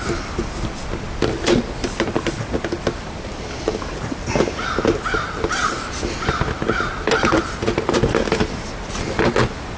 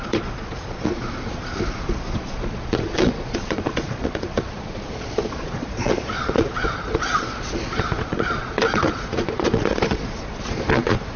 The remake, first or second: second